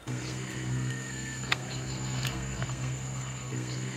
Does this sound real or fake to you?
fake